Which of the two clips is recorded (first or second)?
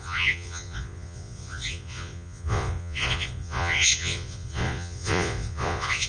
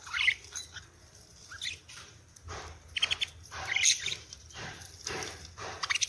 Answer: second